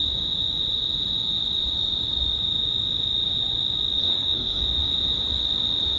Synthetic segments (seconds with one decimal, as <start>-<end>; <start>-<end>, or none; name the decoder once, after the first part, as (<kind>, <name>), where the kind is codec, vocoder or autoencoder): 4.0-4.6 (codec, SNAC)